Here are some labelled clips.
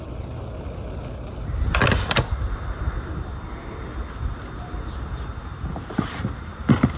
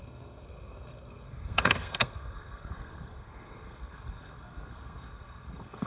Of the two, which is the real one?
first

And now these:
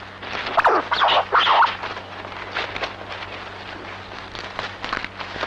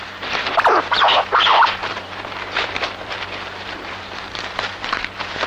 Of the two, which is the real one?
first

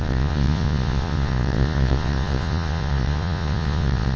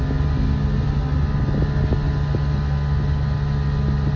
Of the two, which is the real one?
second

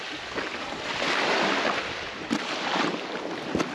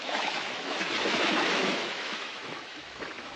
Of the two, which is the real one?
first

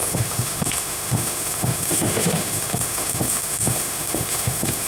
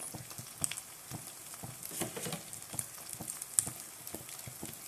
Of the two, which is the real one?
second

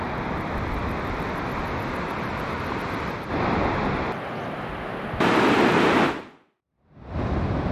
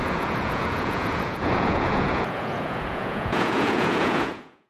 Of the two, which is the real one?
first